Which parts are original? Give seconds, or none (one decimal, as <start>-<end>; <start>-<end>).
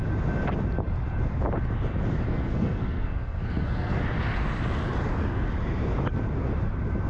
0.0-2.3; 4.0-7.1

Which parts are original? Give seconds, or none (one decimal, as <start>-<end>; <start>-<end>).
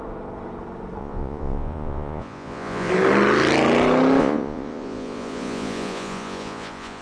0.0-1.0; 2.9-4.2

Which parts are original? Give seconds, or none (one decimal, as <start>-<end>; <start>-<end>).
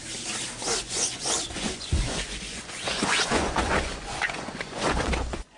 0.0-0.8